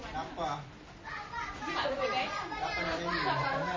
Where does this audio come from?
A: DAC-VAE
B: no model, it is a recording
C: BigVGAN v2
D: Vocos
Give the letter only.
B